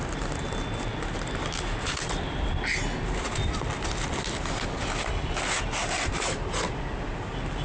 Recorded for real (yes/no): yes